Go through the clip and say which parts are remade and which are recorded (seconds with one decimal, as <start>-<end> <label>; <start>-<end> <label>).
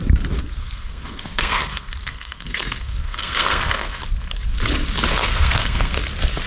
0.0-0.6 recorded; 0.6-4.0 remade; 4.0-5.1 recorded; 5.1-6.0 remade; 6.0-6.5 recorded